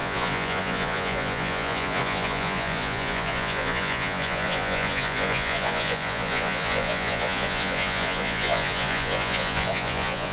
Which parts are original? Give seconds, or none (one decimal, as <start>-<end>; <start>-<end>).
none